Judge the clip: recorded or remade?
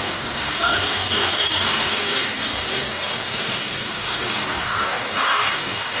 remade